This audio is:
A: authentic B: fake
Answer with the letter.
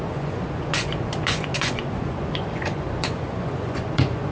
B